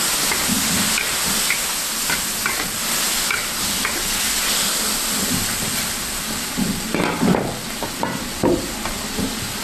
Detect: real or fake real